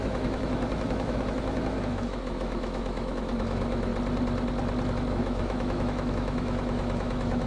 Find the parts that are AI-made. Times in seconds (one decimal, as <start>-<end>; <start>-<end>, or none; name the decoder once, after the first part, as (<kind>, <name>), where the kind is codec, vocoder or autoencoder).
0.0-3.9 (autoencoder, DAC-VAE); 5.1-7.5